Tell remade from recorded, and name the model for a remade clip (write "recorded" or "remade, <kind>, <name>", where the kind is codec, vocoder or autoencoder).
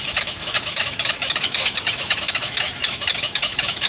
remade, autoencoder, DAC-VAE